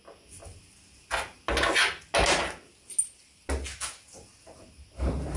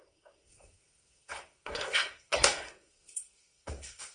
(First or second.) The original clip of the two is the first